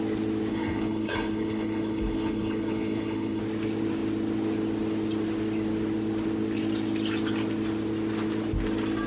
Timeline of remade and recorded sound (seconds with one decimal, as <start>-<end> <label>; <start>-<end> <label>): 0.0-0.5 recorded; 0.5-3.4 remade; 3.4-9.1 recorded